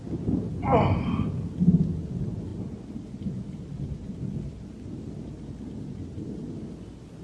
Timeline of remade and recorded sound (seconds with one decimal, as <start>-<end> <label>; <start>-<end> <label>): 0.0-2.5 recorded; 2.5-5.3 remade; 5.3-7.2 recorded